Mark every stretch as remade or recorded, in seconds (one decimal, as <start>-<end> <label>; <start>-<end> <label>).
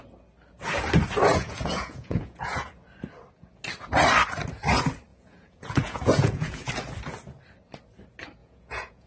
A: 0.0-1.3 recorded; 1.3-2.7 remade; 2.7-5.1 recorded; 5.1-6.7 remade; 6.7-8.4 recorded; 8.4-9.1 remade